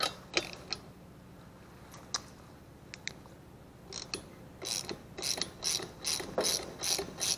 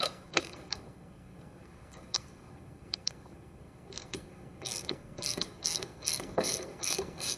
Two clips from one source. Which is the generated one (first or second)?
second